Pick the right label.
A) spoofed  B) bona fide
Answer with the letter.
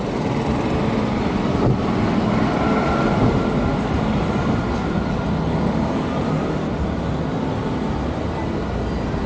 B